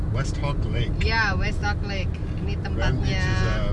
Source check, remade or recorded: recorded